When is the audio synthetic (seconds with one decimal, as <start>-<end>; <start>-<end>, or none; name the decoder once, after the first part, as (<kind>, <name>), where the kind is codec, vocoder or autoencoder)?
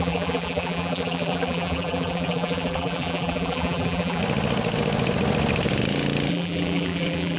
0.0-4.2 (vocoder, BigVGAN v2); 6.3-7.4